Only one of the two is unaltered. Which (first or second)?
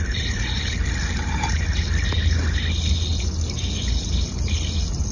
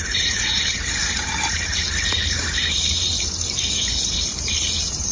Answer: first